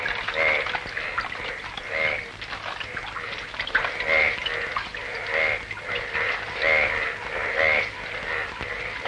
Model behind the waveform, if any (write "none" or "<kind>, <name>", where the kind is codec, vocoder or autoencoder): none